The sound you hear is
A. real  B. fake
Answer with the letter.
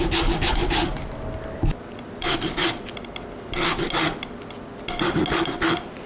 A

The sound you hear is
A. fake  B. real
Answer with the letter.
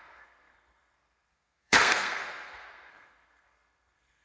A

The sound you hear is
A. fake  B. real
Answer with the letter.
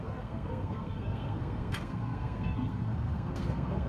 A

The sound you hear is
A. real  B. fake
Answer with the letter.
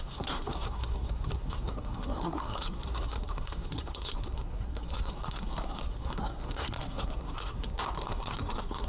B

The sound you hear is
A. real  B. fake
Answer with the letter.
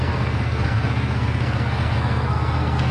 B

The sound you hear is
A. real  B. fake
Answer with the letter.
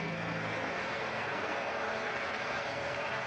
B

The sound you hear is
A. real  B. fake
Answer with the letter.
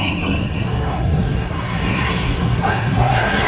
B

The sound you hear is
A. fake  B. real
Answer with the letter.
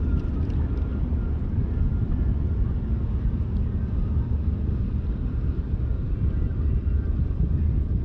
B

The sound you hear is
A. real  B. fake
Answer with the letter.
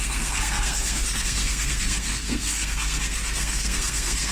B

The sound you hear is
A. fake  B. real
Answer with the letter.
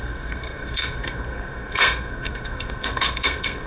A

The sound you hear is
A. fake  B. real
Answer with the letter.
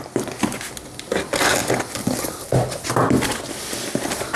B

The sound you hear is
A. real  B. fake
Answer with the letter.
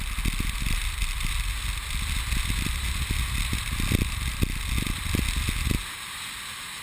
A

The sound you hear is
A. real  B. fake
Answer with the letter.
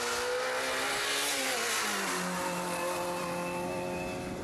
A